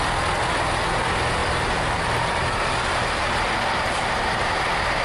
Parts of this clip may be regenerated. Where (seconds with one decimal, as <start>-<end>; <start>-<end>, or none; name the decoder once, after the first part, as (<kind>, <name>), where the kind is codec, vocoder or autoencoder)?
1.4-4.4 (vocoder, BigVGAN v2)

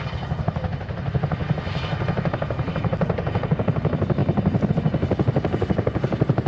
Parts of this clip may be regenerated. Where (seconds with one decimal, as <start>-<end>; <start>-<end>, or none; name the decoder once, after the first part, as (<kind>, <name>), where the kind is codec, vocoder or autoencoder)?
none

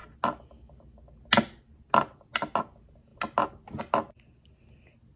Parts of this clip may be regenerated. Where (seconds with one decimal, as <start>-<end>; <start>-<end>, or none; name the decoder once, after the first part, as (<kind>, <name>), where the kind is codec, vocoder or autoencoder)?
none